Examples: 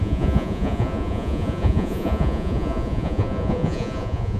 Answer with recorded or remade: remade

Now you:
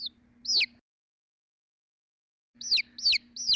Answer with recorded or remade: recorded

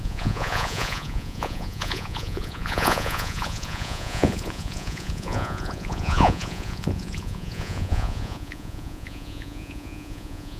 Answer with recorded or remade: remade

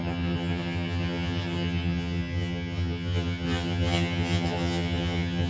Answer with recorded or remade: remade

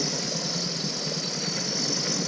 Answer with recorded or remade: recorded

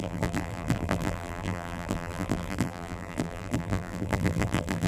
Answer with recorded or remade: remade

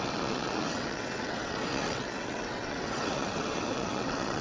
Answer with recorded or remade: remade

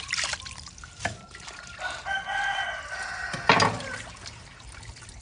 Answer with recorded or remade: recorded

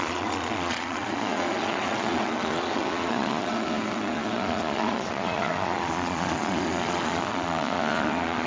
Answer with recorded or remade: remade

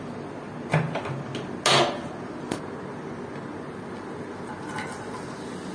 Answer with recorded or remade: recorded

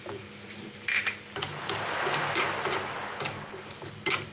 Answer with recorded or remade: recorded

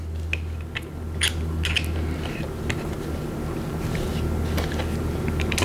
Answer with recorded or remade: recorded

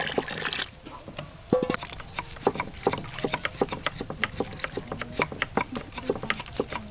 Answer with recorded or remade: recorded